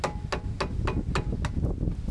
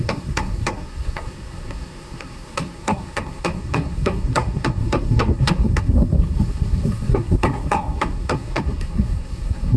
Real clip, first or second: first